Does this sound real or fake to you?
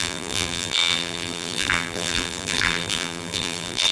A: fake